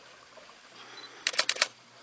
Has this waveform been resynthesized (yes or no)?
no